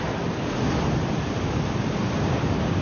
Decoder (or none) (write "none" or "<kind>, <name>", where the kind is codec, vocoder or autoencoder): vocoder, BigVGAN v2